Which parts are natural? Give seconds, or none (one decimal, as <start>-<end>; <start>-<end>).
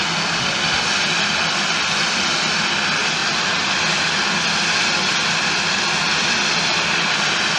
0.0-7.6